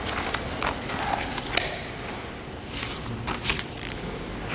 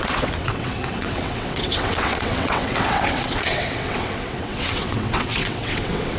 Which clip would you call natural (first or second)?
first